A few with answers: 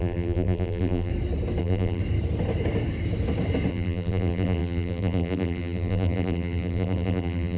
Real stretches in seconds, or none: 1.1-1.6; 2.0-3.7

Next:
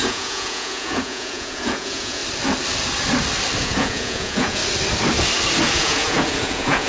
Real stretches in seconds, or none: 2.2-3.6; 4.6-5.7

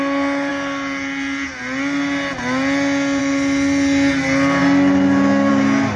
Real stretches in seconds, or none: 0.0-6.0

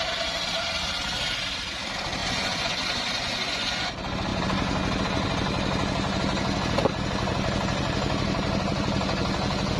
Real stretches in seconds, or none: 0.0-2.2; 3.9-9.8

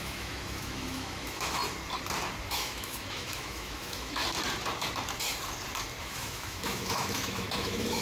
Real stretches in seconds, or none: 1.6-2.5; 4.2-6.0

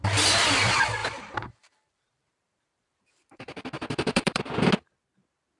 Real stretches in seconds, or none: 0.0-1.0; 4.4-5.6

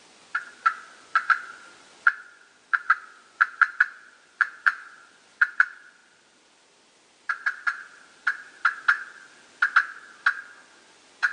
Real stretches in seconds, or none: 6.0-10.4